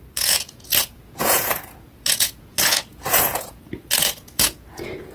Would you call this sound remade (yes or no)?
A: yes